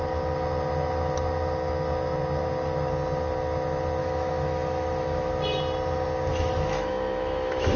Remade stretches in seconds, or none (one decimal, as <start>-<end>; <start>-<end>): 4.0-5.3; 6.3-7.8